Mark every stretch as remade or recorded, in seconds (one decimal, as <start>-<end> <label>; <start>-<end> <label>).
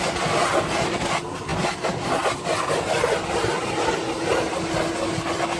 0.0-5.6 recorded